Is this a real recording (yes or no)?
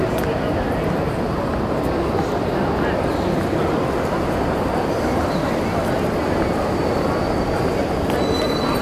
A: yes